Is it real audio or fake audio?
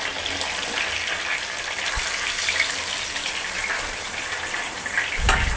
real